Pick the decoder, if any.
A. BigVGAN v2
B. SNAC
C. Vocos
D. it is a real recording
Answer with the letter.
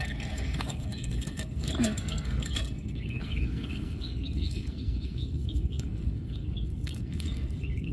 B